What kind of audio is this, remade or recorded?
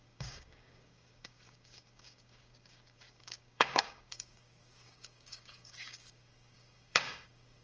remade